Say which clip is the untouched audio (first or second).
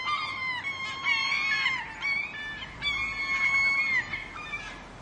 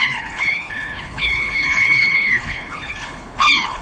first